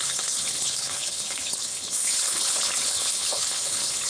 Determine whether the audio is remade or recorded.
remade